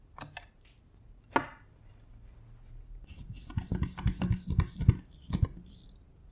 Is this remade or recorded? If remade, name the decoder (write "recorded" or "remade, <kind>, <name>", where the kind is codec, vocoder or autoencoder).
recorded